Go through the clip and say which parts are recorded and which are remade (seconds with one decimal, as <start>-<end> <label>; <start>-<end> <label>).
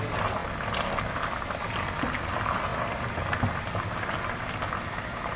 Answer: 0.0-5.4 recorded